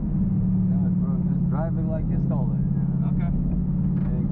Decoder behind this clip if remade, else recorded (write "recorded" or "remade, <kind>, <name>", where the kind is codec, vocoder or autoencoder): recorded